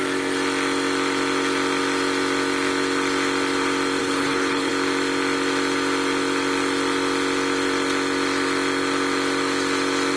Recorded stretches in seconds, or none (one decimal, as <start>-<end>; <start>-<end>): 0.0-4.0; 4.7-10.2